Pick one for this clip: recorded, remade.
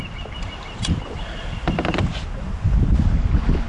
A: recorded